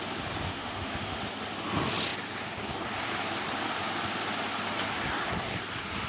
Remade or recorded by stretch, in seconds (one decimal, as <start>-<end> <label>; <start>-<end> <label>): 0.0-0.5 recorded; 0.5-1.2 remade; 1.2-6.1 recorded